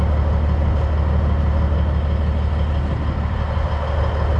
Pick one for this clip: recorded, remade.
recorded